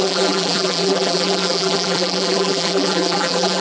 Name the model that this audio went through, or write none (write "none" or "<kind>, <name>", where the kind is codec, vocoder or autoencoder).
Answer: vocoder, BigVGAN v2